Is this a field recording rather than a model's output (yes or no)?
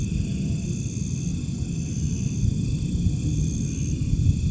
yes